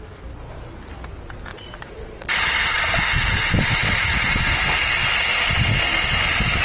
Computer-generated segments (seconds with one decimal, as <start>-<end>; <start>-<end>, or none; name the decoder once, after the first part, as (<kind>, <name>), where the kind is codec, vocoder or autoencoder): 1.5-2.8 (vocoder, Vocos)